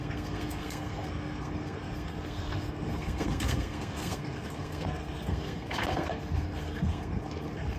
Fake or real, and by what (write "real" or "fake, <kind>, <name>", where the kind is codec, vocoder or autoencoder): fake, codec, SNAC